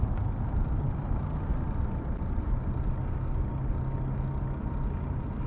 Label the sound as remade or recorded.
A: recorded